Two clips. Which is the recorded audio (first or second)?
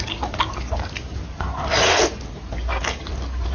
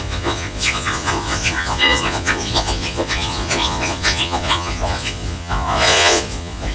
first